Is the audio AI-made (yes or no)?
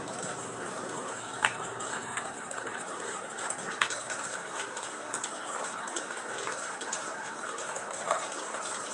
yes